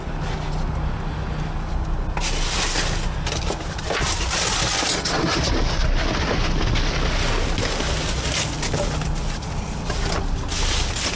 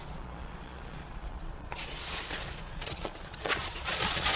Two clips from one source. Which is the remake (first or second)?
second